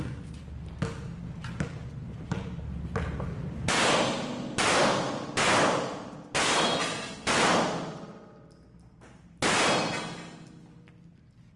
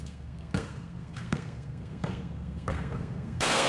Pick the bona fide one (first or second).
first